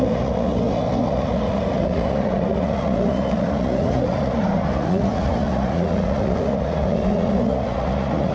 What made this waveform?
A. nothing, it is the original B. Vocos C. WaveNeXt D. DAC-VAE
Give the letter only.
B